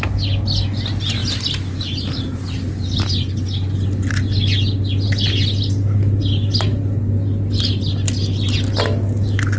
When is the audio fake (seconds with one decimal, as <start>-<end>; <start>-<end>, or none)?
none